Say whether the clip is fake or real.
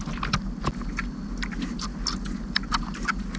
real